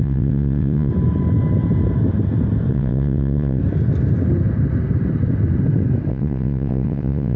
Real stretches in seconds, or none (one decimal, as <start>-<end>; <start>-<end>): 0.9-2.7; 3.6-6.1